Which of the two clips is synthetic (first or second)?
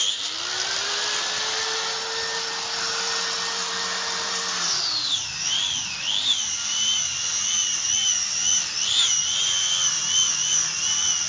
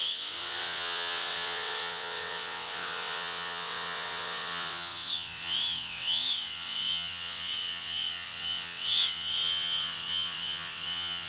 second